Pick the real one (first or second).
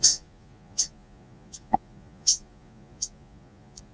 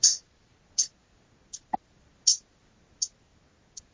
second